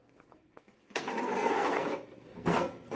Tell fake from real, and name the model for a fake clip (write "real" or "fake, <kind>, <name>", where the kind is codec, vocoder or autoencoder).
fake, codec, SNAC